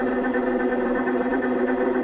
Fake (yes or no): yes